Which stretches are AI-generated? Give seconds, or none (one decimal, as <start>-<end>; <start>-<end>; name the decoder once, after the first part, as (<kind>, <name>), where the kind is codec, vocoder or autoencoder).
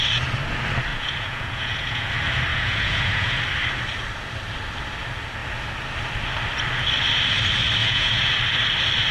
0.9-2.1 (vocoder, Vocos); 2.5-3.4; 7.8-8.3